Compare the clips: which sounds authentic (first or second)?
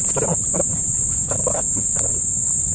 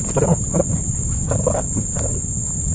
second